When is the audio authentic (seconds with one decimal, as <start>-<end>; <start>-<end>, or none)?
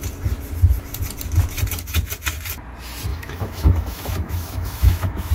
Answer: 0.0-3.1